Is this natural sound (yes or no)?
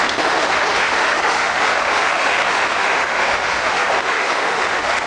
no